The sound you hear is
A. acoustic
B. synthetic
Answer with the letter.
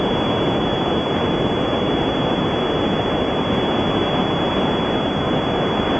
A